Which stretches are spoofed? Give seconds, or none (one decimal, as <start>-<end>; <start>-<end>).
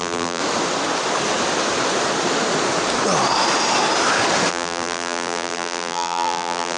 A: 0.0-0.4; 4.5-6.8